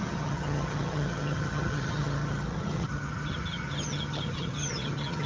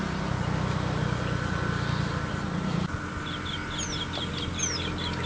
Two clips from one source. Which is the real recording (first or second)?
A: second